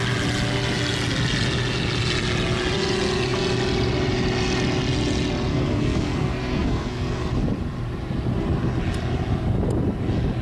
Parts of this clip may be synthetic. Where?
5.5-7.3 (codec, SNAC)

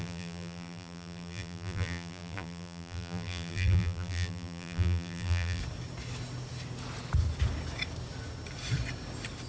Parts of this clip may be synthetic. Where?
0.0-5.6 (vocoder, BigVGAN v2)